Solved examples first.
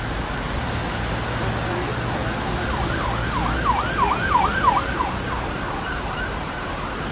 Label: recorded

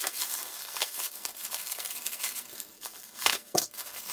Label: remade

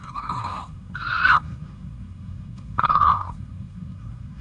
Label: remade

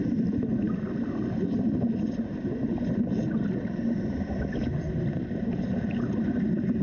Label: recorded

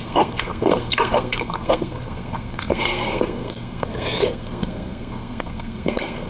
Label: remade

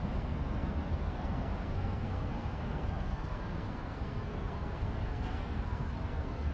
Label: remade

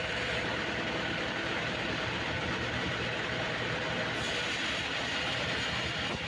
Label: recorded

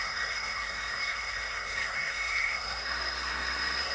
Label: remade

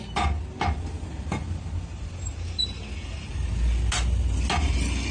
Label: recorded